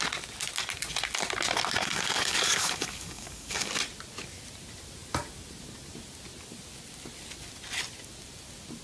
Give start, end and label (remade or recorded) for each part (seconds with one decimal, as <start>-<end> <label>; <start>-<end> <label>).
0.0-1.8 recorded; 1.8-3.7 remade; 3.7-8.8 recorded